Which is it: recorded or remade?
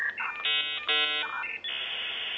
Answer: recorded